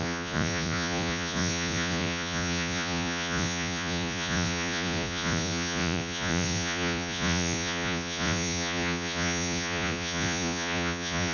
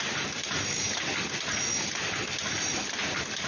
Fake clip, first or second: first